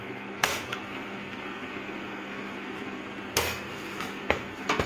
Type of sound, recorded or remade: remade